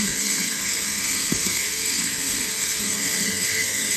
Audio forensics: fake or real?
fake